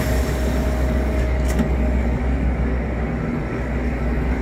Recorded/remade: remade